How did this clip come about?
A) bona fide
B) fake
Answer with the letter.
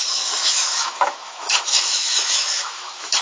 B